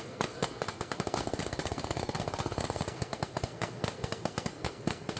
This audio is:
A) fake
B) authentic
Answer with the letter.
A